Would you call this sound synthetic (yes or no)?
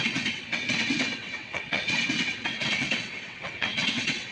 yes